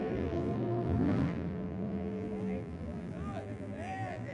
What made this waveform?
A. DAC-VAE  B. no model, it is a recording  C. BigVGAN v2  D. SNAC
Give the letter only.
C